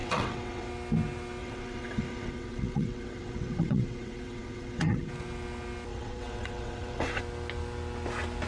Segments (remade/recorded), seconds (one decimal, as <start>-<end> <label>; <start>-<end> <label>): 0.0-0.7 remade; 0.7-1.4 recorded; 1.4-5.1 remade; 5.1-5.9 recorded; 5.9-7.2 remade; 7.2-8.5 recorded